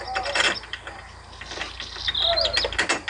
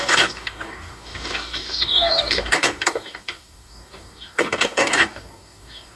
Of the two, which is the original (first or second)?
first